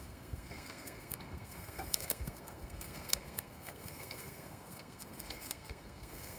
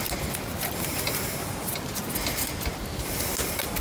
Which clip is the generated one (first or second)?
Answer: first